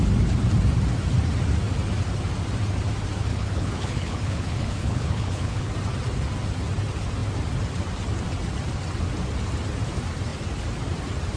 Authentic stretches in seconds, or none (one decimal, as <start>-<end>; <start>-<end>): 0.0-3.3; 5.7-11.4